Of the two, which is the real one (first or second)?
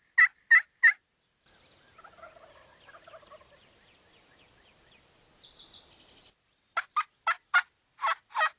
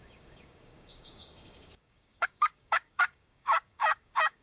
first